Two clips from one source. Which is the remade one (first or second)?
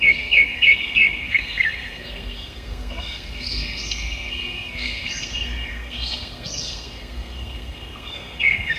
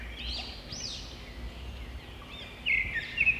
first